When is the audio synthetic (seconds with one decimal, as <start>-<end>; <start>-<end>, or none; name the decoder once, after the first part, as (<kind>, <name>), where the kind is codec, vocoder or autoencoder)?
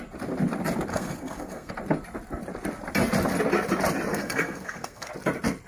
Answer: 0.9-1.7 (codec, SNAC); 4.1-5.1